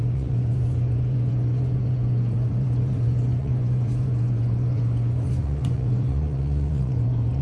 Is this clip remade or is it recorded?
remade